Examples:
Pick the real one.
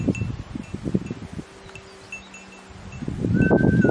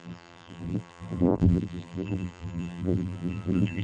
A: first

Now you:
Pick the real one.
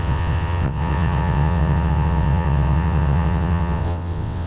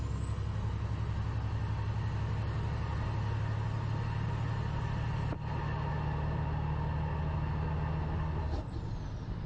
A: second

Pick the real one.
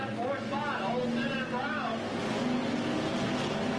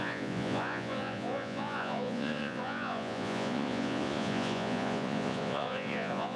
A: first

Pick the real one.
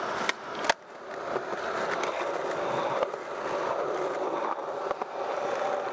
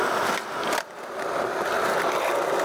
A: first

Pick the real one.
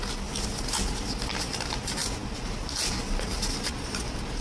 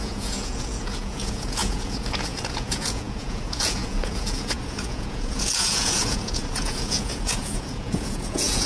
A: first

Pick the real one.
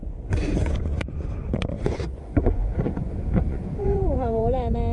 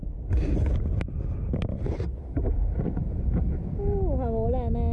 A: second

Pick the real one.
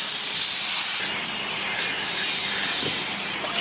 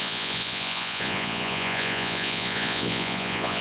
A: first